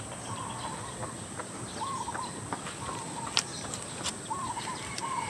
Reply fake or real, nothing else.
fake